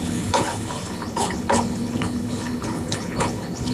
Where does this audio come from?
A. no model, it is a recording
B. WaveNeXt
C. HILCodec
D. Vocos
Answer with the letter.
C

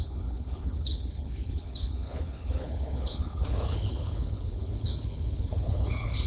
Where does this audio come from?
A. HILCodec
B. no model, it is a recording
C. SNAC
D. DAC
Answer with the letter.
A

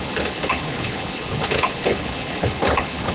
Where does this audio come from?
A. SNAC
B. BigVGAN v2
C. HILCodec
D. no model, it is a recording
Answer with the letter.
C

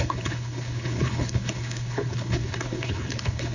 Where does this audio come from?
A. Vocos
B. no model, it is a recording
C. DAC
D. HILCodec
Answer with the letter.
D